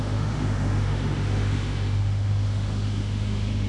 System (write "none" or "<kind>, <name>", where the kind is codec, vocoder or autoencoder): autoencoder, DAC-VAE